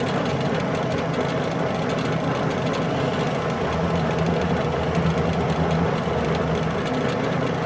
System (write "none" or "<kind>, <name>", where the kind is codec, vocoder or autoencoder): none